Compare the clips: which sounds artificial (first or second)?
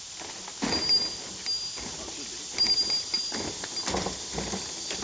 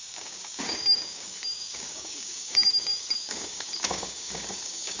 second